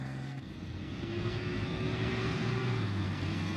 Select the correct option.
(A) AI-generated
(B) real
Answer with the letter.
A